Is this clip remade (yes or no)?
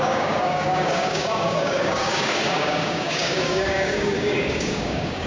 yes